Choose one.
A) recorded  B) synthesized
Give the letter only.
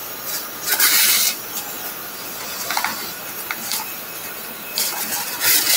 A